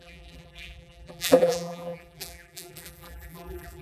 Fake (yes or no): yes